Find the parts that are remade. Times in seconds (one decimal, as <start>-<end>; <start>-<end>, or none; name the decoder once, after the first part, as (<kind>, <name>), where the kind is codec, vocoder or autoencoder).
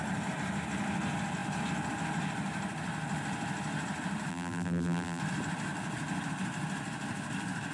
4.3-5.2 (vocoder, BigVGAN v2)